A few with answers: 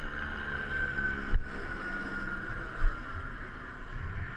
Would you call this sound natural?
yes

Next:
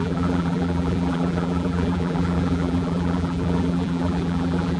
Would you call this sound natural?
no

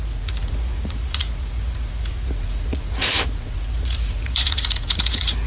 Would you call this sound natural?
no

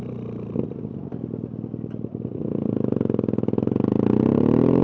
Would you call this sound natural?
yes